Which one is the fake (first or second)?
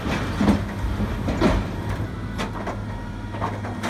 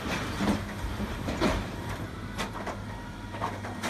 second